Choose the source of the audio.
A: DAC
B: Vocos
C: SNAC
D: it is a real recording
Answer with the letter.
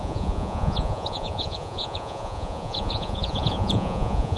B